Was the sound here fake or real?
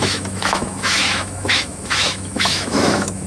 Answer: fake